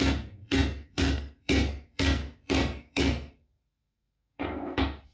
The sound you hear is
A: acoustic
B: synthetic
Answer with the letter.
B